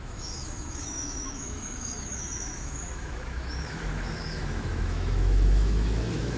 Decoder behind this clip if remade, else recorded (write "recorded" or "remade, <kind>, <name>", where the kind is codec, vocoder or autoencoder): remade, autoencoder, DAC-VAE